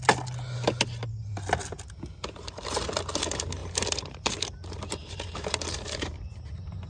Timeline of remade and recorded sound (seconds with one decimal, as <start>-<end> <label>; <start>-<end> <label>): 0.0-5.0 recorded; 5.0-6.9 remade